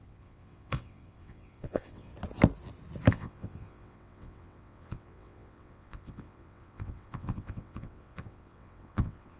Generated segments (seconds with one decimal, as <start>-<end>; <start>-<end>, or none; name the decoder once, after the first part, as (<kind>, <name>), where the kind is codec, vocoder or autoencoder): 0.0-2.1 (vocoder, WaveNeXt); 3.1-9.4